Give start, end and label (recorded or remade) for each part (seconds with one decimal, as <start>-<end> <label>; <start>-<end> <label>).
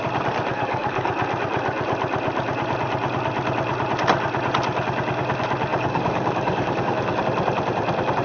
0.0-0.5 recorded; 0.5-1.1 remade; 1.1-5.7 recorded; 5.7-7.2 remade; 7.2-8.2 recorded